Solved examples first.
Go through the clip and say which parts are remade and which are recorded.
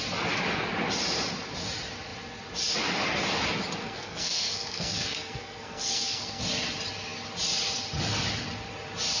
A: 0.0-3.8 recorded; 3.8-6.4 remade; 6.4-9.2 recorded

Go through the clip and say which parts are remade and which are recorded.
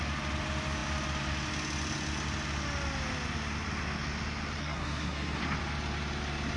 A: 0.0-4.6 recorded; 4.6-5.4 remade; 5.4-6.6 recorded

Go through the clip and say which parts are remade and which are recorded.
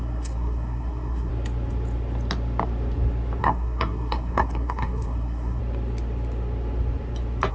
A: 0.0-1.3 remade; 1.3-3.4 recorded; 3.4-5.6 remade; 5.6-7.5 recorded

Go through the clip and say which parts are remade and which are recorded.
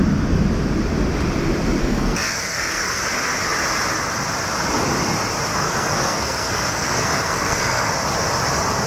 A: 0.0-1.8 recorded; 1.8-3.0 remade; 3.0-5.5 recorded; 5.5-7.9 remade; 7.9-8.9 recorded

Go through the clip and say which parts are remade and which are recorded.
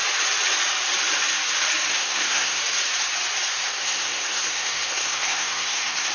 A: 0.0-1.9 recorded; 1.9-2.6 remade; 2.6-3.5 recorded; 3.5-6.1 remade